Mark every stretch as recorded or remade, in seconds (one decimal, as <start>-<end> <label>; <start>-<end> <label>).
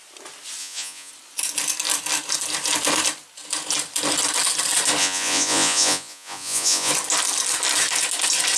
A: 0.0-0.6 recorded; 0.6-1.1 remade; 1.1-5.0 recorded; 5.0-6.9 remade; 6.9-8.6 recorded